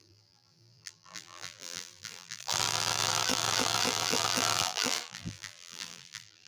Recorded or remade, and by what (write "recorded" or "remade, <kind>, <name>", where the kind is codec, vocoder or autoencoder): remade, vocoder, BigVGAN v2